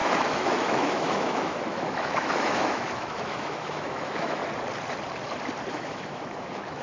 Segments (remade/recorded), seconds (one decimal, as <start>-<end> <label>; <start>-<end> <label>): 0.0-4.4 remade; 4.4-5.7 recorded; 5.7-6.8 remade